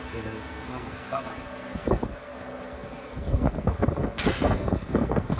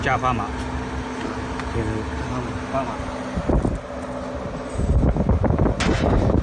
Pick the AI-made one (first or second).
first